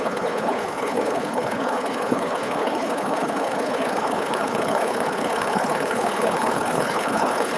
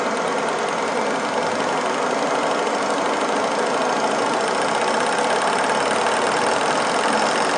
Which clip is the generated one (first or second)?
first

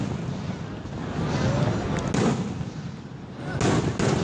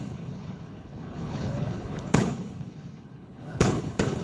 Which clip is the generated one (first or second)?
second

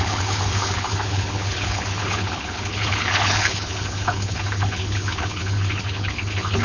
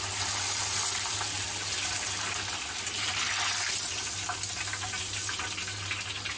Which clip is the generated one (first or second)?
first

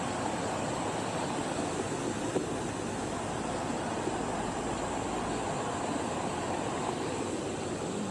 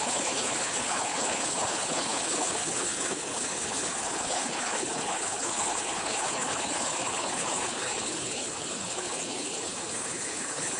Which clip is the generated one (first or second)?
second